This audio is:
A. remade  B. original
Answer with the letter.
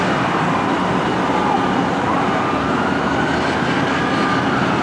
B